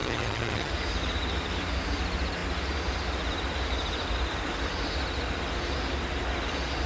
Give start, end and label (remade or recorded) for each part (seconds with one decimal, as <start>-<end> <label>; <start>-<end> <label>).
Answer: 0.0-0.7 remade; 0.7-6.9 recorded